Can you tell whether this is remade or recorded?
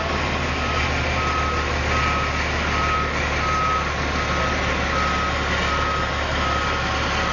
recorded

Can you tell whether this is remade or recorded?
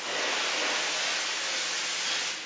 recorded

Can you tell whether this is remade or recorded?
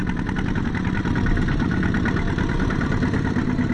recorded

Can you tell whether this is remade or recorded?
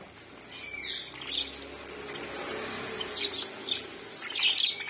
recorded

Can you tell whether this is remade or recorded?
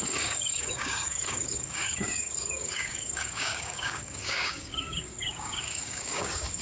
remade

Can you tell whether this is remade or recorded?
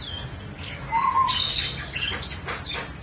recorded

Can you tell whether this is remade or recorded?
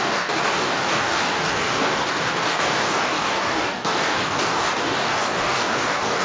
remade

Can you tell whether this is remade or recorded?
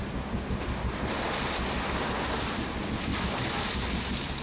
recorded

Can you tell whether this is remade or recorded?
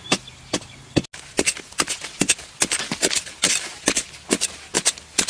recorded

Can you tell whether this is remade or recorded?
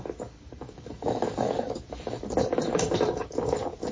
remade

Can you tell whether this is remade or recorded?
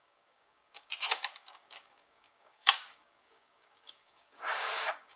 remade